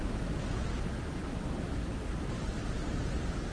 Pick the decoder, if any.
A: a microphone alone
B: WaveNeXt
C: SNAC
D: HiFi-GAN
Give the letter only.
A